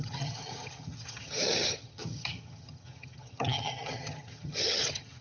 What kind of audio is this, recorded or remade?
remade